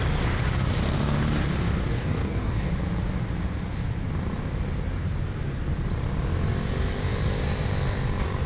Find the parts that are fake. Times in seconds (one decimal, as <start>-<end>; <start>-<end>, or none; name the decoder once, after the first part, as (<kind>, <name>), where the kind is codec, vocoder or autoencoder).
1.9-2.7 (codec, DAC)